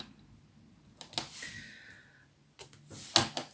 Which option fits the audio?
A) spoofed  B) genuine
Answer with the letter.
B